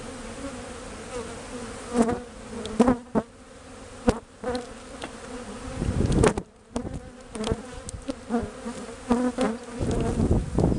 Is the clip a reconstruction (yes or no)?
no